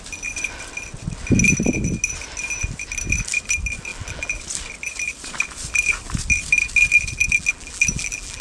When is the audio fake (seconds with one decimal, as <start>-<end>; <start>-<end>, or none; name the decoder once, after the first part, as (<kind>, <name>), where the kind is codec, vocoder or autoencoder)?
3.9-4.4 (vocoder, BigVGAN v2); 7.2-8.4